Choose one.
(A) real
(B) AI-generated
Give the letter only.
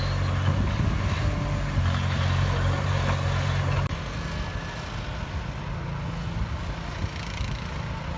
A